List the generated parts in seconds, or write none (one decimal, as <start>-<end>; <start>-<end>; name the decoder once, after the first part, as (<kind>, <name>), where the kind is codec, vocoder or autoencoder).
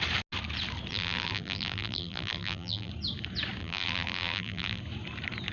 0.9-2.9 (vocoder, BigVGAN v2); 3.6-4.8